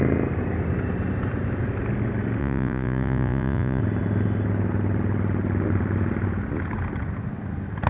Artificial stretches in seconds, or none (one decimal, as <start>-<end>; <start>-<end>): 2.4-3.8